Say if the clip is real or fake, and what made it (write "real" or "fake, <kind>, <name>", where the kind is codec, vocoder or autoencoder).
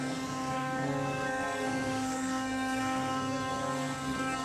fake, codec, SNAC